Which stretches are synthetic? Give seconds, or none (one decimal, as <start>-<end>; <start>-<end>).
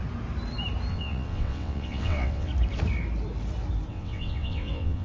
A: 0.9-2.5; 3.9-5.0